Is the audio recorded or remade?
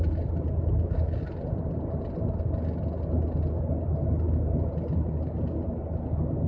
recorded